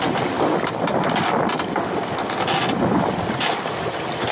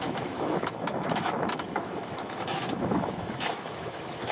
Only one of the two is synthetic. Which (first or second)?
second